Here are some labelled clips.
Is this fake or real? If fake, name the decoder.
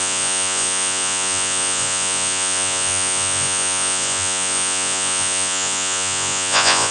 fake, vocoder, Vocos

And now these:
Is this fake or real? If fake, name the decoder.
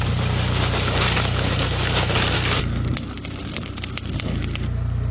real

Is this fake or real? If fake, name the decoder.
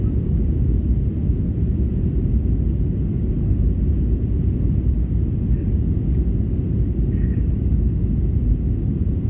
real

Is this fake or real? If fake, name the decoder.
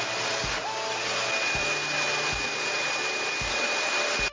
real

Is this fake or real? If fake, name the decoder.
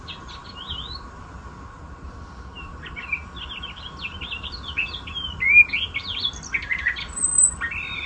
real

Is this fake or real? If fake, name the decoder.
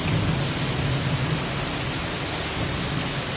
real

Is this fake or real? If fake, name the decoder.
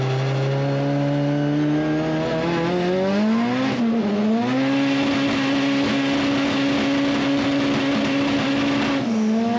real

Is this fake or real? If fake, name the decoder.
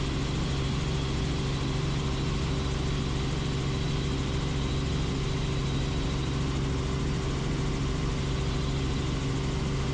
real